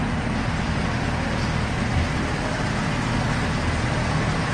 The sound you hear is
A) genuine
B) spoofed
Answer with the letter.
A